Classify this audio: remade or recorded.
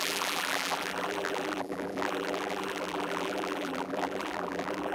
remade